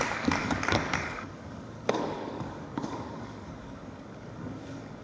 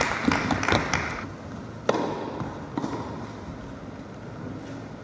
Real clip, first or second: second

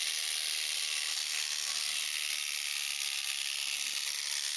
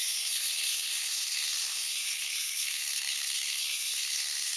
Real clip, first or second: first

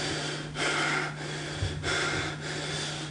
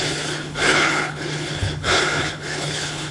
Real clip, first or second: first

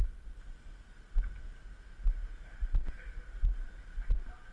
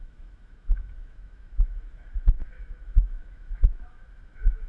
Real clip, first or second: first